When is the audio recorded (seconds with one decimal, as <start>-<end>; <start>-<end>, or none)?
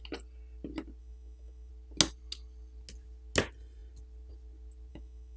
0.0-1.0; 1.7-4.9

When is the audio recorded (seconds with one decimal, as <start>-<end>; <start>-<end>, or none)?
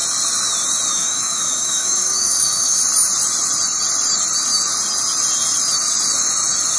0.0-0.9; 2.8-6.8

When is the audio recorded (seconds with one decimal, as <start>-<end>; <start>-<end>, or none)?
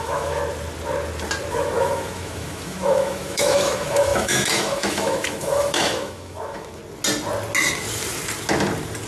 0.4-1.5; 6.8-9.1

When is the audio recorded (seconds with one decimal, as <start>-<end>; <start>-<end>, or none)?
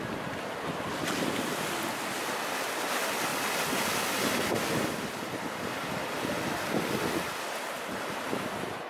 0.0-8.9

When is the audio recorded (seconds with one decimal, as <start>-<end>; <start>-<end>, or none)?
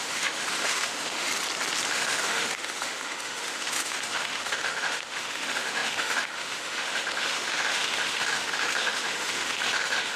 1.3-1.9